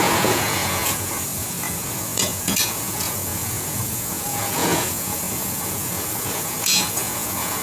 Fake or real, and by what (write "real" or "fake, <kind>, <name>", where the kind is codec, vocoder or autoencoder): fake, vocoder, Vocos